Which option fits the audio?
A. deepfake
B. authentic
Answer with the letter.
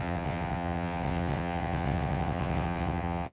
A